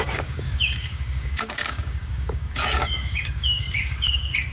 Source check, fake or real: fake